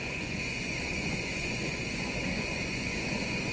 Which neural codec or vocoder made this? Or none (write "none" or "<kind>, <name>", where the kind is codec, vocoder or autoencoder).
vocoder, Vocos